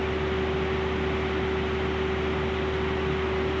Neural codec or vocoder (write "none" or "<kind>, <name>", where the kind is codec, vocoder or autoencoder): none